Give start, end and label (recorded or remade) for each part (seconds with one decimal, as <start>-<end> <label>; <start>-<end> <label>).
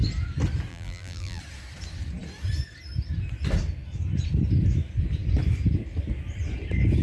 0.0-0.7 recorded; 0.7-1.4 remade; 1.4-7.0 recorded